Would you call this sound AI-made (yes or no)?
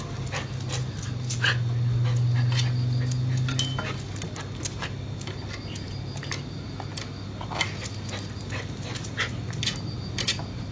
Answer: no